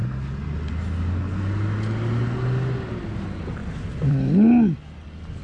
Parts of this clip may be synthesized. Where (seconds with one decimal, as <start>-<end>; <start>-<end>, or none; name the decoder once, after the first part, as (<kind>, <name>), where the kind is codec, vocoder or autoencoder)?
none